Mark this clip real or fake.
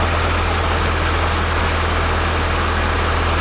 real